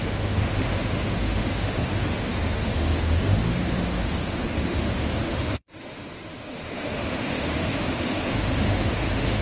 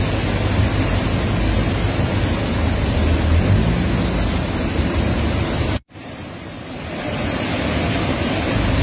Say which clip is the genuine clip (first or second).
second